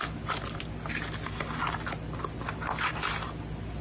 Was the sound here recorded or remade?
recorded